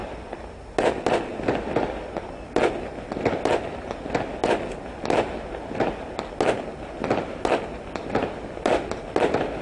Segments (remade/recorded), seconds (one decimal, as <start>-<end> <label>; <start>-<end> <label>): 0.0-9.6 recorded